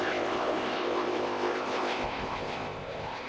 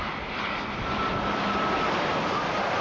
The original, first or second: second